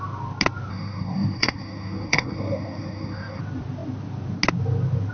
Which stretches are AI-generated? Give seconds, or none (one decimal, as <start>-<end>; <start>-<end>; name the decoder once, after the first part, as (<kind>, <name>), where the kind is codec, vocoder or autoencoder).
0.7-3.4 (codec, SNAC)